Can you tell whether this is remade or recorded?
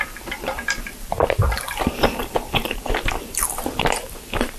remade